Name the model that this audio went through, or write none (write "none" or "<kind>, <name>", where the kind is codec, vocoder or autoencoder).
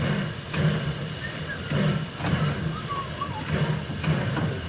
none